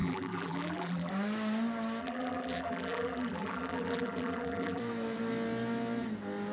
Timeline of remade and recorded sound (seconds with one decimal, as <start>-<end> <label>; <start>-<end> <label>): 0.0-1.1 remade; 1.1-2.0 recorded; 2.0-4.8 remade; 4.8-6.5 recorded